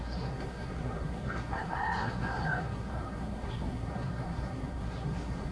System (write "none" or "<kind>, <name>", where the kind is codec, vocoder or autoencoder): codec, SNAC